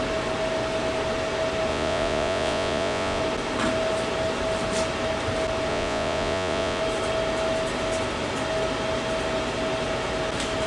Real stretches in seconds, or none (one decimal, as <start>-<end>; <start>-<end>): 0.0-1.7; 3.2-5.7; 6.8-10.7